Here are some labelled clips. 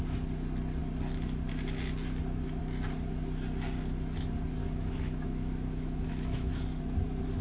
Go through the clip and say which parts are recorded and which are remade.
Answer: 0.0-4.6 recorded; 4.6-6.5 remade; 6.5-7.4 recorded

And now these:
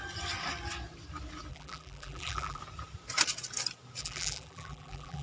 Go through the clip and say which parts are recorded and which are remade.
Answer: 0.0-1.5 recorded; 1.5-2.6 remade; 2.6-4.0 recorded; 4.0-5.2 remade

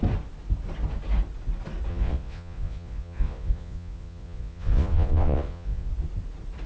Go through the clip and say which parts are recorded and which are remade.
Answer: 0.0-1.9 recorded; 1.9-5.9 remade; 5.9-6.7 recorded

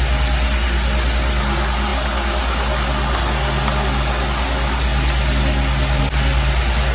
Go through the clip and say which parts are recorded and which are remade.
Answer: 0.0-6.9 recorded

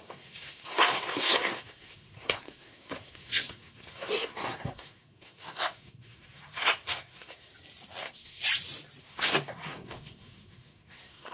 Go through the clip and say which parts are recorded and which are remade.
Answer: 0.0-7.5 remade; 7.5-8.0 recorded; 8.0-8.4 remade; 8.4-9.0 recorded; 9.0-11.3 remade

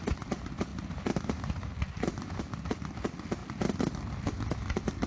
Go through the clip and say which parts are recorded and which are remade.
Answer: 0.0-5.1 recorded